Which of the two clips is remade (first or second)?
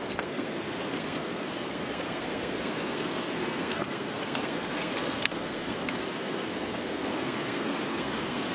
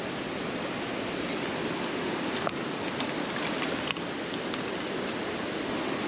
first